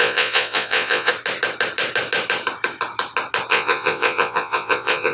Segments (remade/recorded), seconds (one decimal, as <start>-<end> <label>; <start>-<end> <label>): 0.0-1.1 remade; 1.1-3.5 recorded; 3.5-5.1 remade